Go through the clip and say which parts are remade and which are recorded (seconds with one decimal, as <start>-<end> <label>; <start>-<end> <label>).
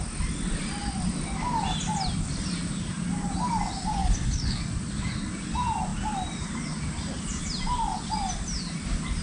0.0-4.0 recorded; 4.0-4.6 remade; 4.6-9.2 recorded